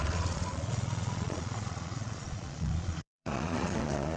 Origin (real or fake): fake